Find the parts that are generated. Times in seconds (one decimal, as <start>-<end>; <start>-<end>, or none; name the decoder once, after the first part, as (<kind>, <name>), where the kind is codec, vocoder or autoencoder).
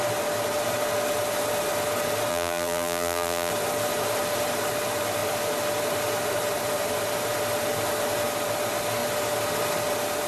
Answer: 2.3-3.5 (vocoder, BigVGAN v2)